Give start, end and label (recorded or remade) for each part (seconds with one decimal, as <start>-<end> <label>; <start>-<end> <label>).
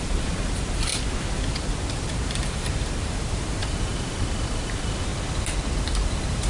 0.0-0.9 remade; 0.9-2.1 recorded; 2.1-5.1 remade; 5.1-6.1 recorded; 6.1-6.5 remade